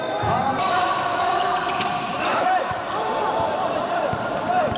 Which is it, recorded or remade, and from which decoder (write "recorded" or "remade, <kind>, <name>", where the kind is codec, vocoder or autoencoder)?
remade, vocoder, BigVGAN v2